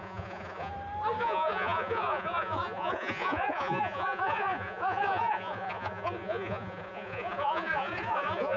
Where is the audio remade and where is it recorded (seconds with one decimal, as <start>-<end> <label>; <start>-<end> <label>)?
0.0-0.7 remade; 0.7-1.2 recorded; 1.2-8.6 remade